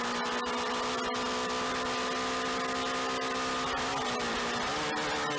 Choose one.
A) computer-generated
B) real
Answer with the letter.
B